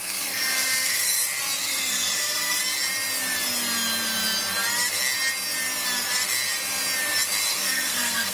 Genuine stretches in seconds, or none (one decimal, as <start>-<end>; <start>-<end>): 1.1-1.6; 2.6-7.5